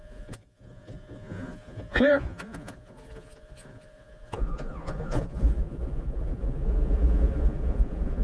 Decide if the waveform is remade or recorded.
remade